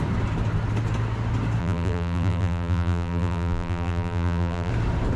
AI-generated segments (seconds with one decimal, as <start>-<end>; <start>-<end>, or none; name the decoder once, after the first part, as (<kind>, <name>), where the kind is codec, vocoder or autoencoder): 1.6-4.7 (vocoder, BigVGAN v2)

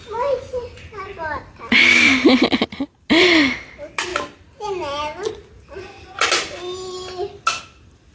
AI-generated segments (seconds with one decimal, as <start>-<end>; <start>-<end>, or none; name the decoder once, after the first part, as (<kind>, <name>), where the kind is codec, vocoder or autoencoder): none

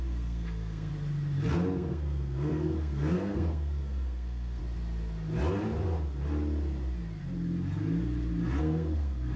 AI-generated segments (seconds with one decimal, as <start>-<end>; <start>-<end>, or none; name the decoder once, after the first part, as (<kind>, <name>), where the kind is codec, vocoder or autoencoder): 0.0-0.9 (codec, SNAC); 1.5-4.6; 8.6-9.4

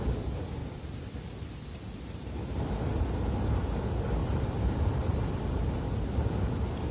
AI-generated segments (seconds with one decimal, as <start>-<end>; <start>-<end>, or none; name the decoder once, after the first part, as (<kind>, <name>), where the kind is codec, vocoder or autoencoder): 4.2-5.9 (vocoder, BigVGAN v2)